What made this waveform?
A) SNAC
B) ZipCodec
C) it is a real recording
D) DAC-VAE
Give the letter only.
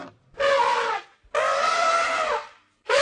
C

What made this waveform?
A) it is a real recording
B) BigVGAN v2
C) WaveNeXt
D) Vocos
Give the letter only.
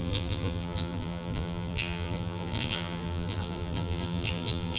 B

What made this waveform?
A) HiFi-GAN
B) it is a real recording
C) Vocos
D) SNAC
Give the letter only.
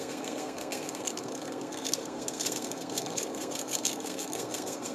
D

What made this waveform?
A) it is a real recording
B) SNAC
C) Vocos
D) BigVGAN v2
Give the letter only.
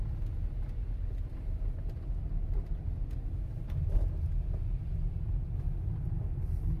A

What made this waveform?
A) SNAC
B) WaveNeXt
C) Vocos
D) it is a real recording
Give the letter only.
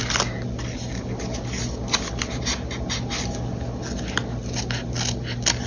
D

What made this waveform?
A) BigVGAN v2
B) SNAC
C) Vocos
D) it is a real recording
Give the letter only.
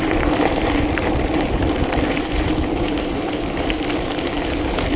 A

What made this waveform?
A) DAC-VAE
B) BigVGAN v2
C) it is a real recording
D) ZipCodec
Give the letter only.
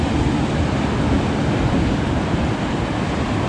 C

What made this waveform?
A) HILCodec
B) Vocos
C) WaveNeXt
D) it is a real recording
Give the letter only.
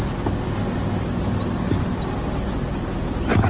D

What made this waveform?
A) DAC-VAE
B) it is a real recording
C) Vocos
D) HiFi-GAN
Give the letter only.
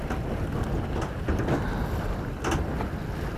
B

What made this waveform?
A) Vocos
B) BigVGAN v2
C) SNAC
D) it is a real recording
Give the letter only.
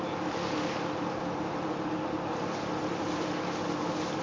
D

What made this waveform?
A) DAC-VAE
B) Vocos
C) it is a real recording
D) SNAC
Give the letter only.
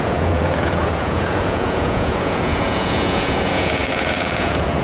B